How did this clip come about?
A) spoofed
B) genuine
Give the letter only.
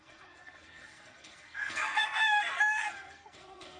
A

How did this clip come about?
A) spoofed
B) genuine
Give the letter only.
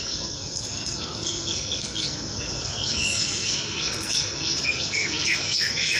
A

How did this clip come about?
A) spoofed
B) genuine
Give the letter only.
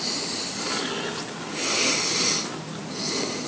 B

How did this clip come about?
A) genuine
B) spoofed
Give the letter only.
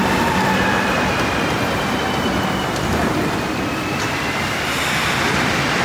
A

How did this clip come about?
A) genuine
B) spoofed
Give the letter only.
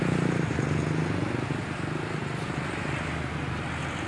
A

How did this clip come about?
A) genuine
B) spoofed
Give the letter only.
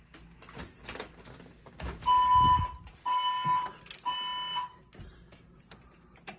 A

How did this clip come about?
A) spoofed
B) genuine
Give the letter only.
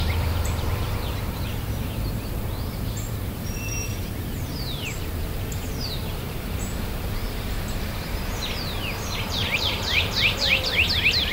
A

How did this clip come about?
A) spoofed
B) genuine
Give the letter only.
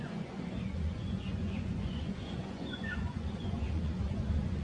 A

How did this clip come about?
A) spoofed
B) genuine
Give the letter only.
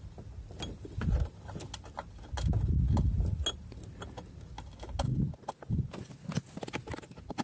B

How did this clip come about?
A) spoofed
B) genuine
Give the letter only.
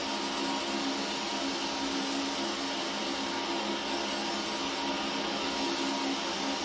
B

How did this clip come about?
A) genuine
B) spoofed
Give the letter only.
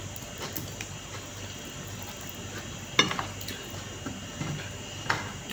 A